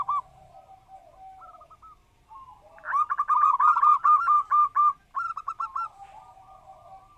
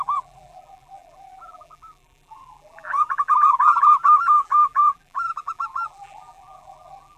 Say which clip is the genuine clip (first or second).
first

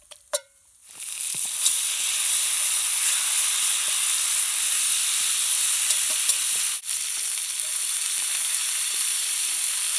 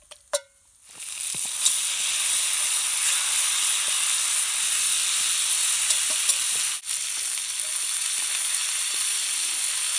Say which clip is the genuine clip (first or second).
second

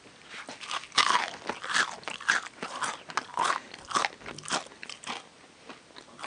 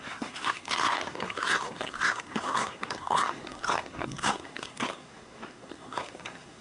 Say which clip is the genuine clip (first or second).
first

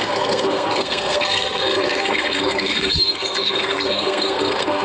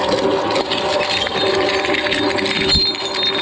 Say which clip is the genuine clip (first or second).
second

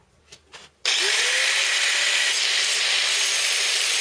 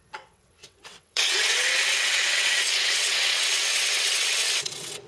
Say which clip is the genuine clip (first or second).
first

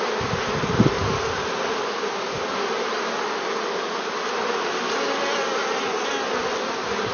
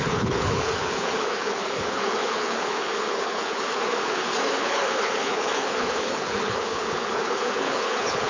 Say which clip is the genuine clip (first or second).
first